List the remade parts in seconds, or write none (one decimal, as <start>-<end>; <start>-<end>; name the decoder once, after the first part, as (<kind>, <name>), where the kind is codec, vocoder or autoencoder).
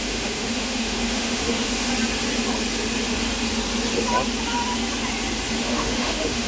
0.0-1.9 (autoencoder, DAC-VAE); 5.6-6.5